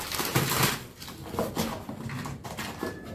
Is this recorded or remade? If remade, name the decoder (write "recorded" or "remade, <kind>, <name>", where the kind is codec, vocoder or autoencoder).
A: recorded